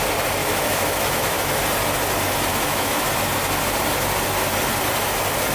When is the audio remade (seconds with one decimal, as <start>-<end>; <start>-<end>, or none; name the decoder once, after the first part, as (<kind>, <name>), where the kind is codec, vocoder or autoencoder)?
0.4-1.6 (autoencoder, DAC-VAE); 2.5-3.1